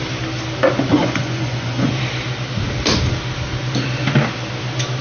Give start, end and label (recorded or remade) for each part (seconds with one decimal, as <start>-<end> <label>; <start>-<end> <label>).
0.0-0.9 recorded; 0.9-1.9 remade; 1.9-5.0 recorded